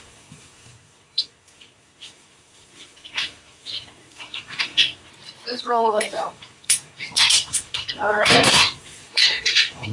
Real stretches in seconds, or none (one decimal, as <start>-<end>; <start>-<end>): 5.1-5.6